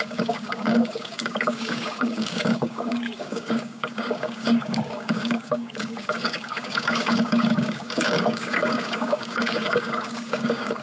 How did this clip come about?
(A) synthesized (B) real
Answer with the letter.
A